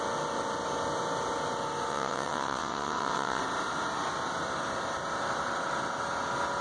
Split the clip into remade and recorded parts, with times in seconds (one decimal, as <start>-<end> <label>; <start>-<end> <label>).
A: 0.0-1.9 recorded; 1.9-3.4 remade; 3.4-6.6 recorded

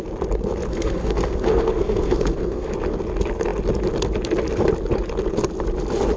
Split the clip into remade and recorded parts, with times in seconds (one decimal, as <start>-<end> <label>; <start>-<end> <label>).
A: 0.0-0.7 recorded; 0.7-2.7 remade; 2.7-6.2 recorded

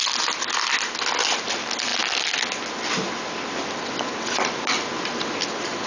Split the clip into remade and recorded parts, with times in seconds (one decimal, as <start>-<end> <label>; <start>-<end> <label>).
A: 0.0-5.9 recorded

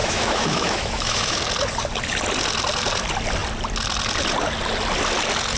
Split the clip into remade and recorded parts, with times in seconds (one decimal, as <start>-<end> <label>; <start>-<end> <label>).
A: 0.0-1.4 remade; 1.4-5.6 recorded

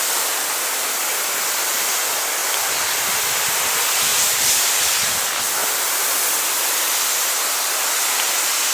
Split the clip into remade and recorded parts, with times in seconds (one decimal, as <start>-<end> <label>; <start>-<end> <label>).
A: 0.0-4.1 recorded; 4.1-4.7 remade; 4.7-5.6 recorded; 5.6-6.2 remade; 6.2-8.7 recorded